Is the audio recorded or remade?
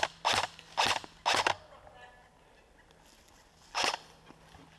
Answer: recorded